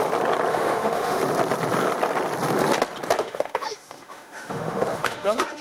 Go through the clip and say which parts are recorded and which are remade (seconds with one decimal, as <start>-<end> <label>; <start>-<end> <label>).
0.0-0.5 recorded; 0.5-1.2 remade; 1.2-3.2 recorded; 3.2-5.6 remade